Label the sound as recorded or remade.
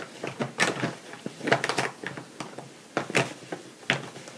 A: recorded